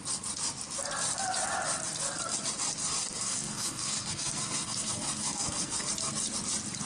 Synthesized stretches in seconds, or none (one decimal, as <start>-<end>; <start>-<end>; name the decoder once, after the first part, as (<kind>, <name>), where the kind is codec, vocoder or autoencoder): 3.0-5.9 (codec, SNAC)